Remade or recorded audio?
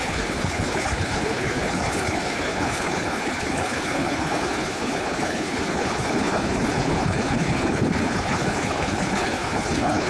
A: remade